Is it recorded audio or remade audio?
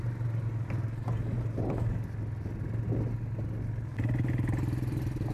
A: recorded